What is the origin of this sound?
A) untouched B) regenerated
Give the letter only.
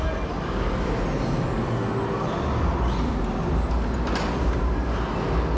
A